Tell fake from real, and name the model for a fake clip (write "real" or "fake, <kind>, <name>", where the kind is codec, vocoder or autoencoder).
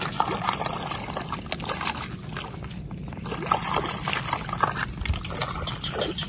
real